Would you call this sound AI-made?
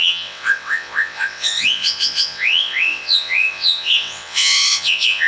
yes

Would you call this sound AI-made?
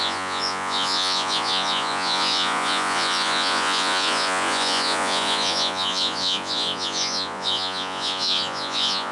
yes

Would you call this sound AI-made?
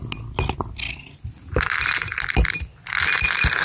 no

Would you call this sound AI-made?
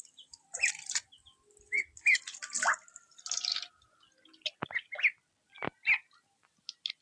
no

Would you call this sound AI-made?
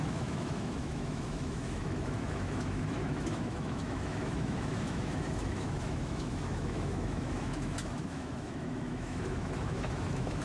yes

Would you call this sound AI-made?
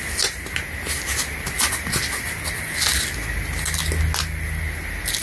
no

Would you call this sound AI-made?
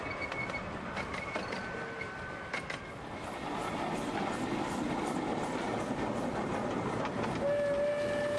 no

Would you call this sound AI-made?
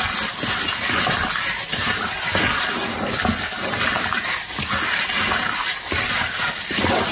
no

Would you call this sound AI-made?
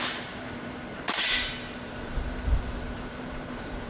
yes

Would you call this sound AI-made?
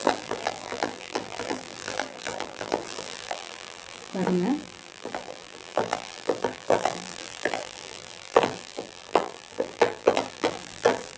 yes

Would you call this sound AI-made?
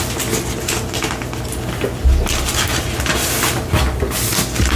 no